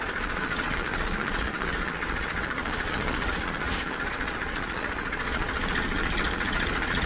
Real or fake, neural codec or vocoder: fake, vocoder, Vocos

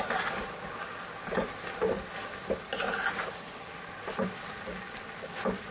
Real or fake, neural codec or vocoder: real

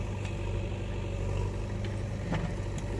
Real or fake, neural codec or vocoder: real